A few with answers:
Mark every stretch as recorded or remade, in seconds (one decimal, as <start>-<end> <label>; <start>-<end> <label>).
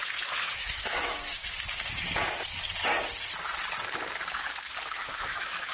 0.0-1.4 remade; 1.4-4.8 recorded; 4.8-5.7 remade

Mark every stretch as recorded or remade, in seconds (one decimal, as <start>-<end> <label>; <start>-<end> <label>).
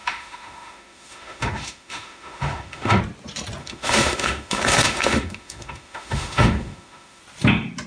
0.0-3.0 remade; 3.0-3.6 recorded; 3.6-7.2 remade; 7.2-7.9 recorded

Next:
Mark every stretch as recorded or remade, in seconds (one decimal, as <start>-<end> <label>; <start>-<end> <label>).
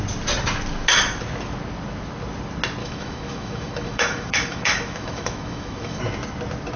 0.0-2.8 recorded; 2.8-6.0 remade; 6.0-6.8 recorded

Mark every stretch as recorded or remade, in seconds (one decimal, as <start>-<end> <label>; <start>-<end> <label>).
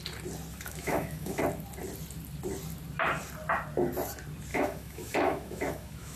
0.0-0.5 recorded; 0.5-1.4 remade; 1.4-4.5 recorded; 4.5-6.2 remade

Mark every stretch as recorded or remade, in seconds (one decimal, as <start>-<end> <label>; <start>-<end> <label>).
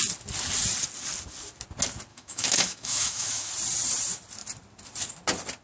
0.0-2.1 recorded; 2.1-3.5 remade; 3.5-5.6 recorded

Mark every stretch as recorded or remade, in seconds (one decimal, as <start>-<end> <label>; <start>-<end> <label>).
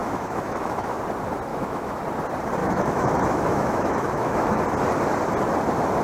0.0-1.0 remade; 1.0-1.5 recorded; 1.5-2.0 remade; 2.0-2.6 recorded; 2.6-4.6 remade; 4.6-6.0 recorded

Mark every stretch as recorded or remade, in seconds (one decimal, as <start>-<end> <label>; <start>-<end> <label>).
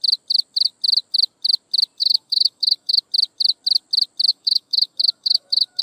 0.0-2.0 recorded; 2.0-3.0 remade; 3.0-4.3 recorded; 4.3-5.8 remade